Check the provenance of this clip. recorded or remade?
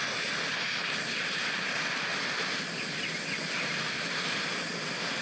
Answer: remade